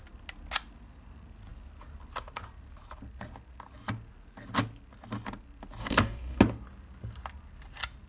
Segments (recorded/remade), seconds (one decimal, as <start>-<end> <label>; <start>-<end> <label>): 0.0-5.8 recorded; 5.8-6.4 remade; 6.4-8.1 recorded